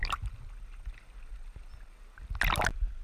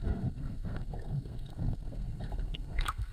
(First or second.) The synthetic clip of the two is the second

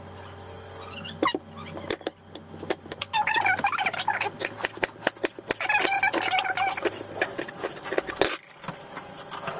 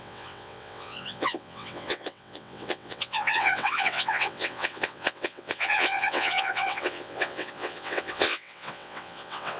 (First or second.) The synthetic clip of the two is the second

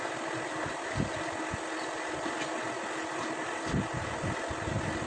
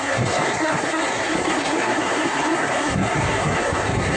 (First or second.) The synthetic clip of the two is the second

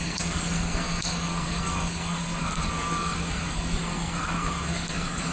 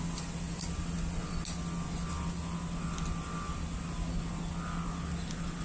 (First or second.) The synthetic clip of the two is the first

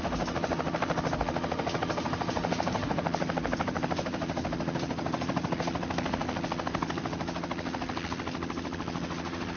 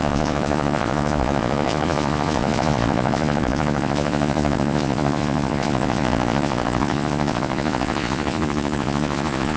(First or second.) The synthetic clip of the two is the second